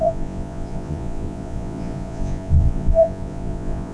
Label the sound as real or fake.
fake